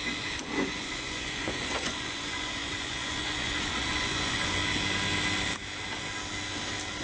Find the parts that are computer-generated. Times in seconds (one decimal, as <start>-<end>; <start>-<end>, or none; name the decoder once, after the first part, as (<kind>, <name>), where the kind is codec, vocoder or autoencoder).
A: 0.0-4.6 (vocoder, Vocos)